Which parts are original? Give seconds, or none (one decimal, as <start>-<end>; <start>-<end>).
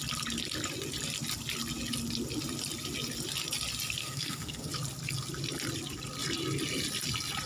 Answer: 0.0-4.0; 4.7-7.5